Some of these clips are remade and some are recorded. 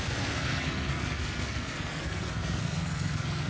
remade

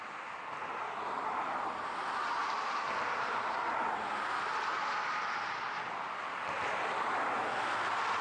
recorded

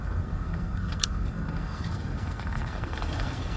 remade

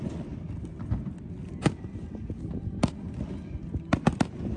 recorded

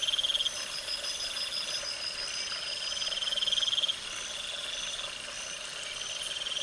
recorded